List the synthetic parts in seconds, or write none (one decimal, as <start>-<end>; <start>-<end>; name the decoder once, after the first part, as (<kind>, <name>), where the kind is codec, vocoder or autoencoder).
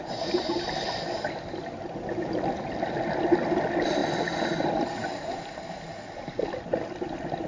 none